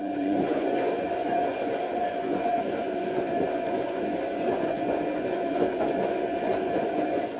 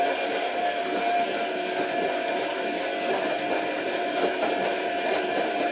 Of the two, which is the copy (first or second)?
first